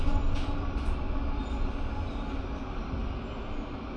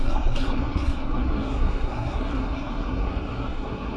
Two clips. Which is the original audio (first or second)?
first